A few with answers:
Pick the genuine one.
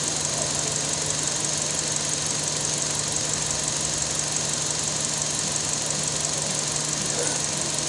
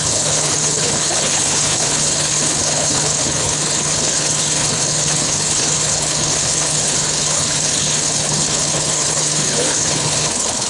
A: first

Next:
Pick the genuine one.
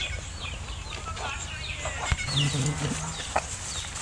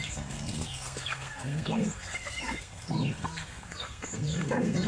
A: first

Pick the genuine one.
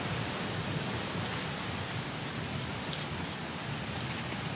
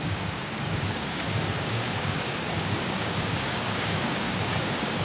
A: first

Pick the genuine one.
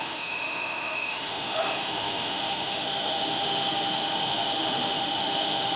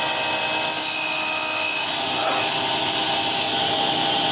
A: second